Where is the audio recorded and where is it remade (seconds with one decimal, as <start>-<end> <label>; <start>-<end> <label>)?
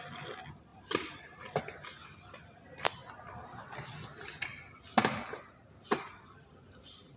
0.0-0.7 recorded; 0.7-1.6 remade; 1.6-7.2 recorded